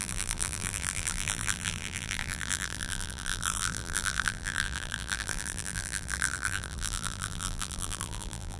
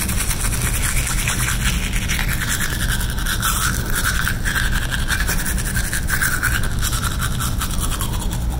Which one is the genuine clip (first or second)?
second